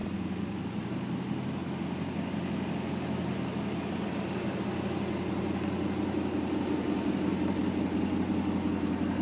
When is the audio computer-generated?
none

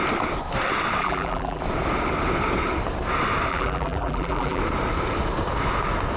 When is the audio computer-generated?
1.0-1.6 (vocoder, BigVGAN v2); 3.5-4.6